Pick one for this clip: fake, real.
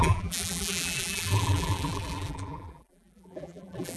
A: fake